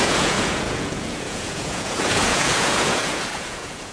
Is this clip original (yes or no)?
no